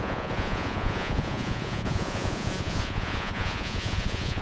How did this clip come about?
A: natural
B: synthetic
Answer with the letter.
B